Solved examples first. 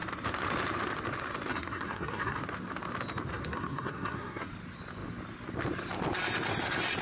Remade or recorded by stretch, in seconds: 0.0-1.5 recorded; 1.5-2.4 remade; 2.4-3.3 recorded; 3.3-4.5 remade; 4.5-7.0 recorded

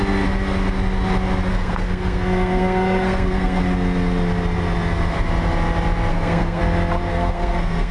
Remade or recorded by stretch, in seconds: 0.0-1.5 recorded; 1.5-3.6 remade; 3.6-6.1 recorded; 6.1-6.6 remade; 6.6-7.1 recorded; 7.1-7.9 remade